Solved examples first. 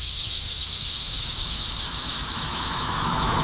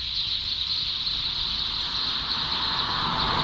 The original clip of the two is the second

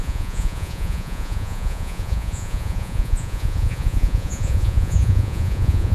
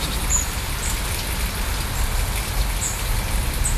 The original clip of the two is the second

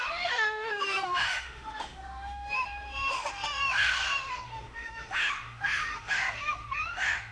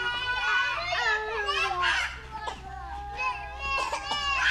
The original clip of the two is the second